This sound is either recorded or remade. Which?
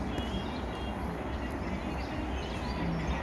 recorded